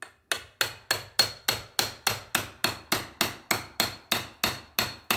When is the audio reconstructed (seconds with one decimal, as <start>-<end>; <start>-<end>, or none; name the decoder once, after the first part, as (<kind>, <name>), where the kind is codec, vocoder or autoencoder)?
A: none